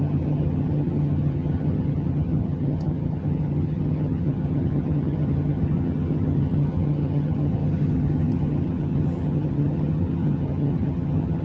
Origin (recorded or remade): remade